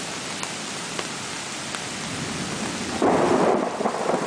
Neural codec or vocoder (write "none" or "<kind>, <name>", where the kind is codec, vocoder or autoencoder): none